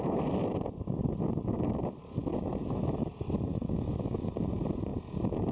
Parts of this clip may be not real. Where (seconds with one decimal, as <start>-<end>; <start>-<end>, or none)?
2.2-3.1; 3.5-4.3